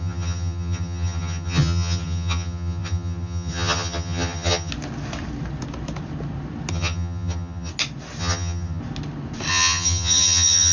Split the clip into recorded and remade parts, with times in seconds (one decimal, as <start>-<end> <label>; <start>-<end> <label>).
0.0-4.7 remade; 4.7-6.7 recorded; 6.7-7.7 remade; 7.7-8.2 recorded; 8.2-8.8 remade; 8.8-9.5 recorded; 9.5-10.7 remade